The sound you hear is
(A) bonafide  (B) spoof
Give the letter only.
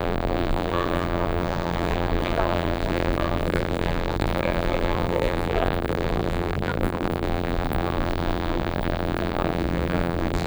B